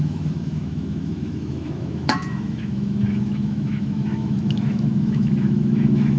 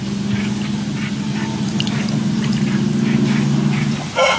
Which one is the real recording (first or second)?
second